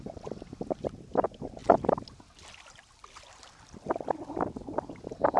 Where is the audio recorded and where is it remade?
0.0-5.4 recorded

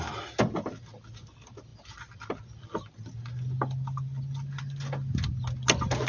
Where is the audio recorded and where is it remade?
0.0-6.1 recorded

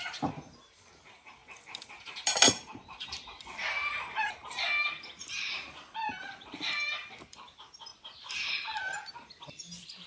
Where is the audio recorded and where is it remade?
0.0-1.4 remade; 1.4-2.0 recorded; 2.0-7.9 remade; 7.9-8.5 recorded; 8.5-10.1 remade

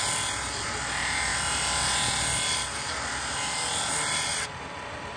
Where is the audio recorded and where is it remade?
0.0-5.2 recorded

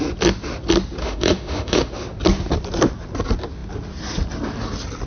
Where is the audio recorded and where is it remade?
0.0-1.0 recorded; 1.0-1.9 remade; 1.9-5.1 recorded

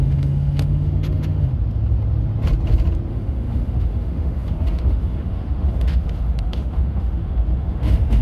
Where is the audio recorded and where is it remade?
0.0-1.5 remade; 1.5-3.1 recorded; 3.1-8.2 remade

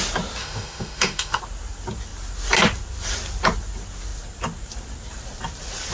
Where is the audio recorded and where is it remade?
0.0-0.4 recorded; 0.4-1.4 remade; 1.4-5.9 recorded